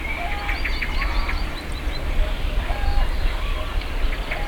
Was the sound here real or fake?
real